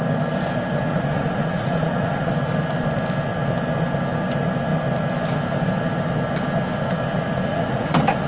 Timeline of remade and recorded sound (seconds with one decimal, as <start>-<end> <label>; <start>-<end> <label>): 0.0-0.9 recorded; 0.9-2.3 remade; 2.3-7.5 recorded; 7.5-8.3 remade